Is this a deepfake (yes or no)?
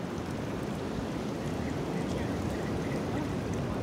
no